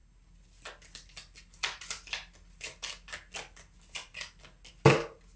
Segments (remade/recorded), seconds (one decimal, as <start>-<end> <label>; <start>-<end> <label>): 0.0-5.4 recorded